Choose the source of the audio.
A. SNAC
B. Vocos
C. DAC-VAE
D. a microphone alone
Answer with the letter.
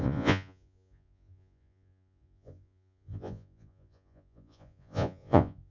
B